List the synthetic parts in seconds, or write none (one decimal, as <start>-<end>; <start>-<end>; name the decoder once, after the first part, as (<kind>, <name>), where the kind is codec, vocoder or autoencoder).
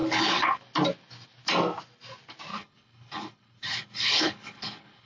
0.0-0.6 (codec, HILCodec); 2.5-5.1